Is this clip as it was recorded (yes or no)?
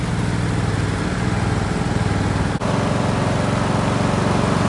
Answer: yes